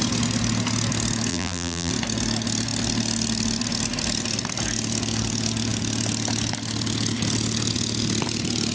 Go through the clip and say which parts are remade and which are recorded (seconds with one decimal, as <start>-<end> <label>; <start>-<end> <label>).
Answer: 0.0-1.3 recorded; 1.3-1.9 remade; 1.9-8.7 recorded